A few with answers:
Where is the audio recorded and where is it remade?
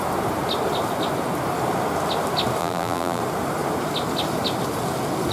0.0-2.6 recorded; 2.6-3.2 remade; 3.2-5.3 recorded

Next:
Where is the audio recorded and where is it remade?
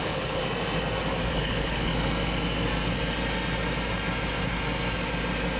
0.0-0.4 remade; 0.4-1.3 recorded; 1.3-1.9 remade; 1.9-5.6 recorded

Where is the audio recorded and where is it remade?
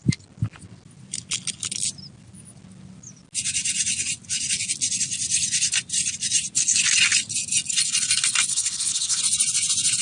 0.0-8.5 recorded; 8.5-9.2 remade; 9.2-10.0 recorded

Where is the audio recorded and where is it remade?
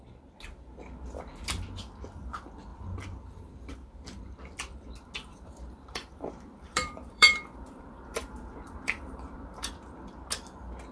0.0-5.3 recorded; 5.3-9.7 remade; 9.7-10.9 recorded